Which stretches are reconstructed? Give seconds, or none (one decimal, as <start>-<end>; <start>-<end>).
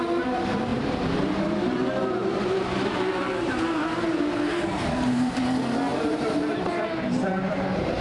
0.7-5.4; 5.9-8.0